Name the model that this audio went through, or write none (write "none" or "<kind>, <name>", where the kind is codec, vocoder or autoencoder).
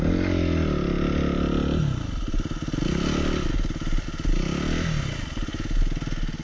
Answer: none